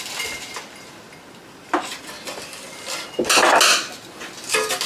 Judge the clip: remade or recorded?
recorded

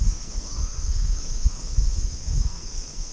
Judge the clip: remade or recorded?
remade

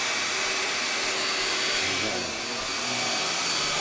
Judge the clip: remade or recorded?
recorded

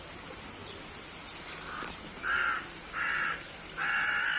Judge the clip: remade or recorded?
recorded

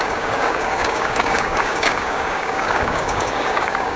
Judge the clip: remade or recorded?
remade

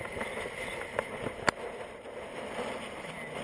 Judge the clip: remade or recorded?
recorded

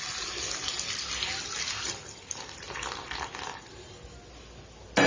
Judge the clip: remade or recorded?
recorded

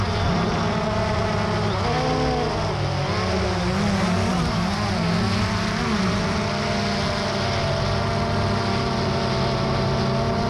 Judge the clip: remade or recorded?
recorded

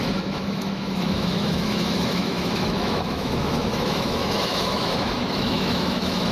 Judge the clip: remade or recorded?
remade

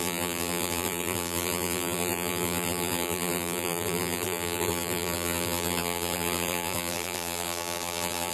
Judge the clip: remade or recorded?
remade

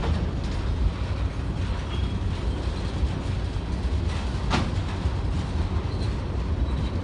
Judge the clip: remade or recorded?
recorded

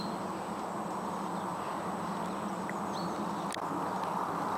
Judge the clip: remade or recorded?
recorded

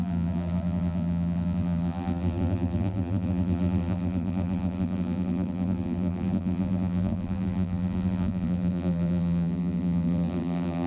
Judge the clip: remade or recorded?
remade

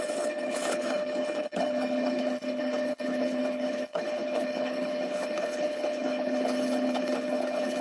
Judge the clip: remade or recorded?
remade